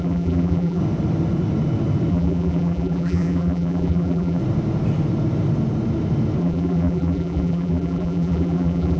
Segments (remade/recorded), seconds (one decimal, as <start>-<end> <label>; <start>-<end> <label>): 0.0-0.8 remade; 0.8-2.1 recorded; 2.1-4.4 remade; 4.4-6.4 recorded; 6.4-9.0 remade